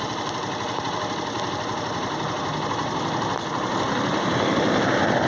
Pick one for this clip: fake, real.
real